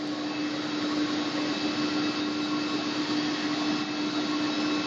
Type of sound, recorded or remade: recorded